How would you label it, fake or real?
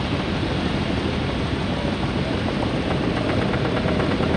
real